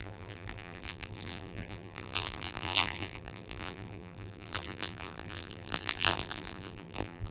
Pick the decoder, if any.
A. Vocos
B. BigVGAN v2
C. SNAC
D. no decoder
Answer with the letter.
B